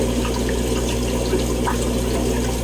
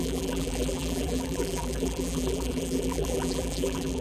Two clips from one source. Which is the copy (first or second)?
second